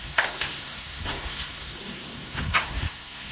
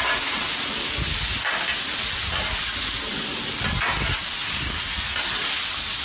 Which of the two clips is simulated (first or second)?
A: first